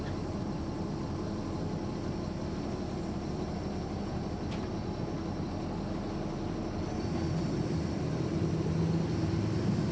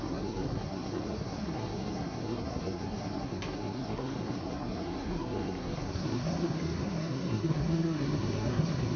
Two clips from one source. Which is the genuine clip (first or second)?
first